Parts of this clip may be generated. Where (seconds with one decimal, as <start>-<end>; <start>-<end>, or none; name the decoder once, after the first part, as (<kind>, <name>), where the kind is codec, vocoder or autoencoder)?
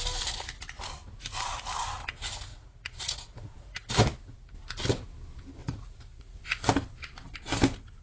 2.5-3.9 (vocoder, Vocos); 5.6-6.6